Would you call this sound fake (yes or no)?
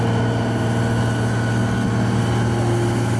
no